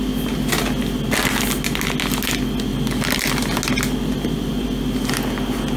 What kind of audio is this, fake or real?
real